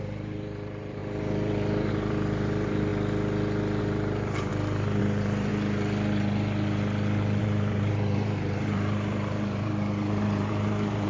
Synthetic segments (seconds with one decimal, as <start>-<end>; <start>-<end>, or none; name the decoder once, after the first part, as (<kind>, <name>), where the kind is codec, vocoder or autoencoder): 0.0-2.9 (vocoder, BigVGAN v2); 3.8-4.5; 5.0-5.5; 7.4-11.1